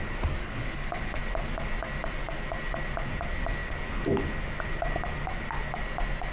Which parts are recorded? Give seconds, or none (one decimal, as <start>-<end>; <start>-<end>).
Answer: 0.0-0.4; 1.2-6.3